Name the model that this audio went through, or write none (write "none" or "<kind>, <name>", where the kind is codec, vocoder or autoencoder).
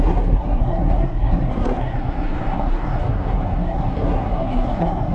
codec, SNAC